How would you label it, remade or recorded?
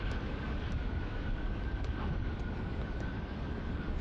remade